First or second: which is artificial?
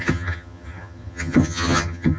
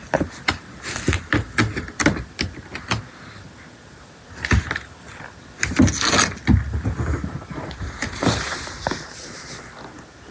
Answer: first